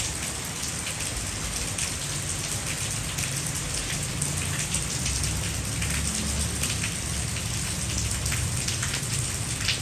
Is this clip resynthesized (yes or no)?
no